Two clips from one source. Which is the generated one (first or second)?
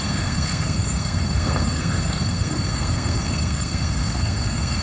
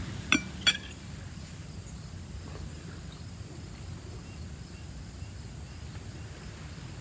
first